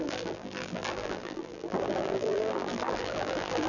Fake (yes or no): yes